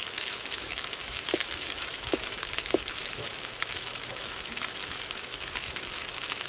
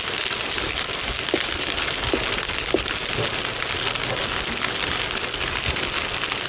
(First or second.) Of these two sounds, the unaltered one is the second